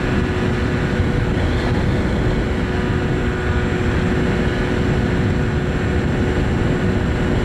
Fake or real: real